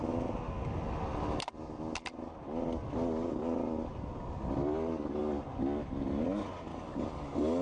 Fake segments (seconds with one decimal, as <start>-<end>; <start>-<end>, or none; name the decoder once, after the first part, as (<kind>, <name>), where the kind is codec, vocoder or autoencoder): 6.7-7.6 (codec, DAC)